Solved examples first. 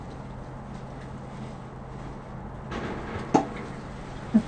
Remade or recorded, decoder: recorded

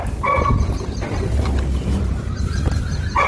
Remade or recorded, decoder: recorded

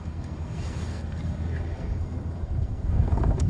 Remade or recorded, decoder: remade, codec, SNAC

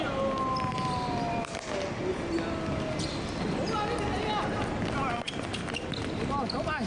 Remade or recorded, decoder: recorded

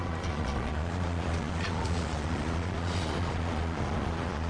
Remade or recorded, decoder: remade, vocoder, Vocos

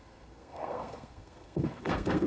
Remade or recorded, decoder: remade, codec, SNAC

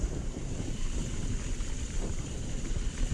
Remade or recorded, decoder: remade, vocoder, BigVGAN v2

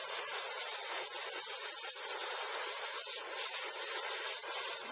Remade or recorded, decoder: recorded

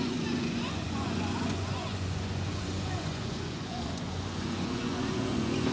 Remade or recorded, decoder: remade, vocoder, Vocos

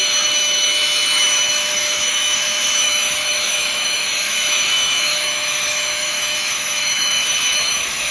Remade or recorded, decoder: remade, autoencoder, DAC-VAE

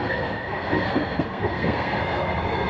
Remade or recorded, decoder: remade, codec, SNAC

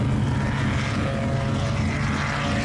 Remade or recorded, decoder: recorded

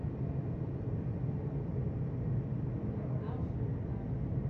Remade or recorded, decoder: recorded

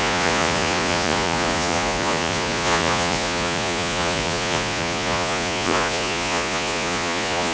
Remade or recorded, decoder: remade, vocoder, Vocos